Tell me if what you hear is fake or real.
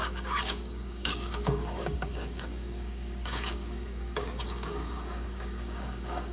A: fake